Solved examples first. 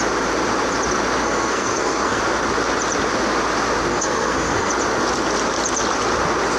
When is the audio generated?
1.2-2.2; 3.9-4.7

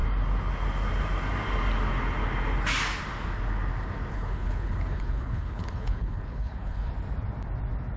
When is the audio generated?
4.1-6.9

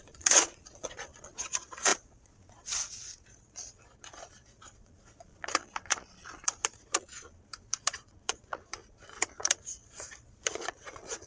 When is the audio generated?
0.0-11.3

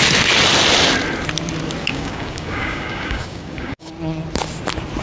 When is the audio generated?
1.8-3.9

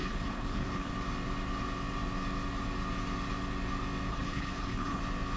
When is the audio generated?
0.0-0.9; 4.1-5.0

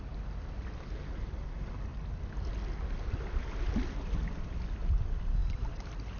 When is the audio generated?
none

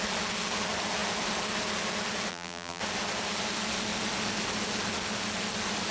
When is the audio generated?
2.3-2.8